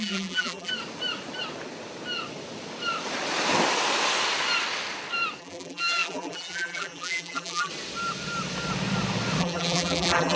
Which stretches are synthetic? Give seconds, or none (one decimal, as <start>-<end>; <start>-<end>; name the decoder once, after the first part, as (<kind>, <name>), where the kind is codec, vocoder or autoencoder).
0.0-0.7 (vocoder, BigVGAN v2); 5.4-7.7; 9.4-10.4